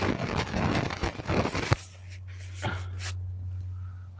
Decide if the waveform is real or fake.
real